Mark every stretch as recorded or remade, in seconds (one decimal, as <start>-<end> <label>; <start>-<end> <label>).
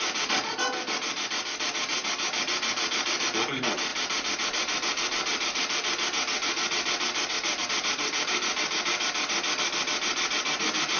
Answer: 0.0-11.0 recorded